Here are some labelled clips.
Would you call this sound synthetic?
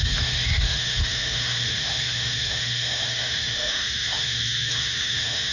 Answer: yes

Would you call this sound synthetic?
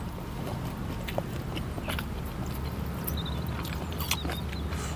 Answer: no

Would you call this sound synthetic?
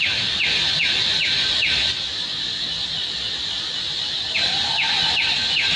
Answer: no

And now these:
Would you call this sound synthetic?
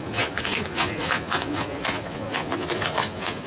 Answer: yes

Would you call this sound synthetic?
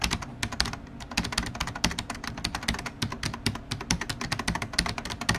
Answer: no